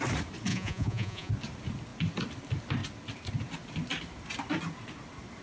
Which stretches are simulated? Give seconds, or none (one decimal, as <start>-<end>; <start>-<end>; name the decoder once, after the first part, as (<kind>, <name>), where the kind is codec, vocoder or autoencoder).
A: 0.5-1.3 (vocoder, Vocos)